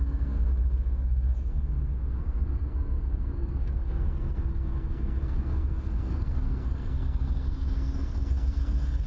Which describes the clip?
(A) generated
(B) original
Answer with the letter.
A